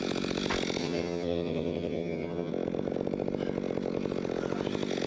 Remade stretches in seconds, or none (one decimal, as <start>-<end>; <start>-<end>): 0.8-2.5